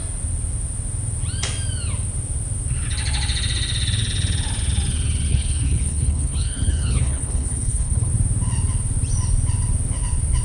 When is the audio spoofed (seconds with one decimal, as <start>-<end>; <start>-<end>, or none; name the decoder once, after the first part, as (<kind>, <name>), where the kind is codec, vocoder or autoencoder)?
5.3-8.1 (codec, HILCodec)